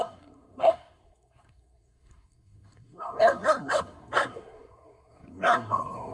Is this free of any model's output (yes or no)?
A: no